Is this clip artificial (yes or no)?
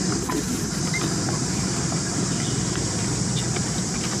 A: no